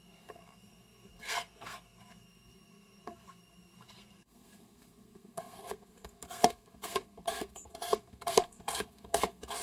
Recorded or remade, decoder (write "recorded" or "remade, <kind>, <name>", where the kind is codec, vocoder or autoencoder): remade, codec, SNAC